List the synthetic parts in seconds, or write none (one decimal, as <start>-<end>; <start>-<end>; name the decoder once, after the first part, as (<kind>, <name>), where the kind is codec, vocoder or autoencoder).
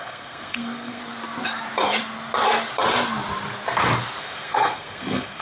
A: 0.0-1.0 (codec, SNAC); 4.2-5.4